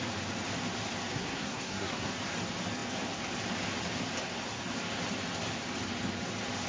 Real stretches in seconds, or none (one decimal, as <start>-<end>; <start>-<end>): 0.0-1.1; 2.1-6.7